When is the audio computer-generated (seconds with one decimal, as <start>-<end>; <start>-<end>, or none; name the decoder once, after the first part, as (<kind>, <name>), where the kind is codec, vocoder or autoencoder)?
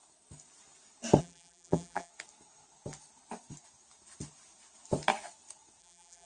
1.2-2.1 (vocoder, BigVGAN v2); 5.8-6.2